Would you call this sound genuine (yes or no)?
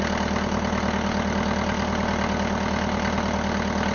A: yes